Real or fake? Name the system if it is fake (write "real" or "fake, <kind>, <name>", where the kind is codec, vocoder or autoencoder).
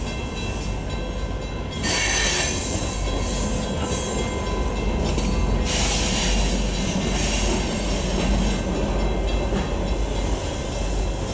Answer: real